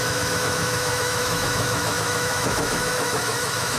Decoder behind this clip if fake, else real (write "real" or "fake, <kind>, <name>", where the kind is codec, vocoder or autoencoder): fake, autoencoder, DAC-VAE